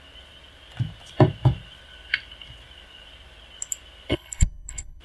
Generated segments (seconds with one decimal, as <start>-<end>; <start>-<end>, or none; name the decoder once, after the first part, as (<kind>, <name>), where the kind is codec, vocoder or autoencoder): 4.1-5.0 (codec, HILCodec)